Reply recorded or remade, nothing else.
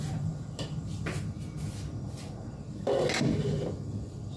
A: recorded